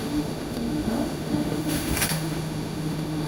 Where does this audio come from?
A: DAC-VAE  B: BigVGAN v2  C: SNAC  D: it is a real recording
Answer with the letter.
A